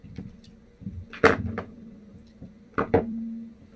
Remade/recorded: remade